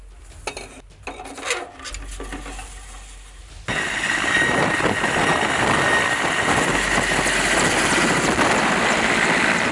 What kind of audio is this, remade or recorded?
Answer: recorded